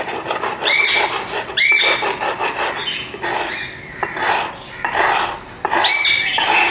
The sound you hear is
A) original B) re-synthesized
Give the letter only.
A